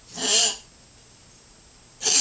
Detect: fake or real real